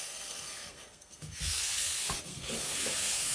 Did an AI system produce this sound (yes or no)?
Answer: yes